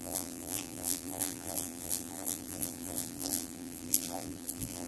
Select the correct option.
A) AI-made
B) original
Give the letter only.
A